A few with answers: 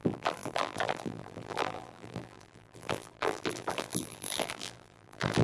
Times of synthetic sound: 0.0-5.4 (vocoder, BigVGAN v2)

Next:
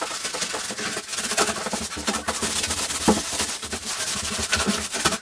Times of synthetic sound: 1.1-4.2 (vocoder, BigVGAN v2)

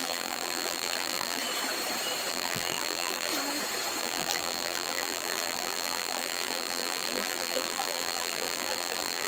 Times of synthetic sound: 0.0-1.4 (vocoder, BigVGAN v2); 2.3-3.3; 4.0-9.3

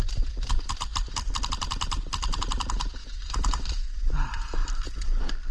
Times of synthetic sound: none

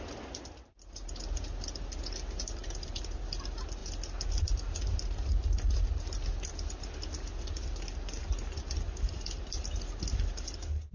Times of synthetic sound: 2.6-3.2 (vocoder, BigVGAN v2)

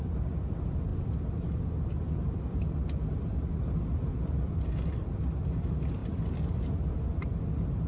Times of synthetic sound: 0.9-2.4 (vocoder, BigVGAN v2); 4.1-5.5; 6.0-6.6